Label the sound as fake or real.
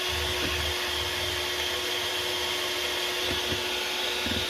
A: real